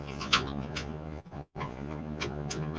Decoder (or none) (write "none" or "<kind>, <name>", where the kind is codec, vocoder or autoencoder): vocoder, Vocos